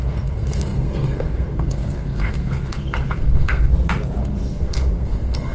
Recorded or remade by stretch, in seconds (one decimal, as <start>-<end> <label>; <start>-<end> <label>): 0.0-3.7 remade; 3.7-4.2 recorded; 4.2-5.5 remade